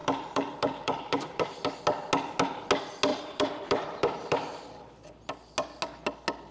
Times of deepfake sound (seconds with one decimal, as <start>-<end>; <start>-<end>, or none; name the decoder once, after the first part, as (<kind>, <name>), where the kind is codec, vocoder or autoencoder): 0.0-1.7 (vocoder, BigVGAN v2); 3.1-4.9